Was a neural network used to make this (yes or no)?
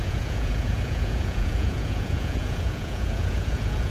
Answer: yes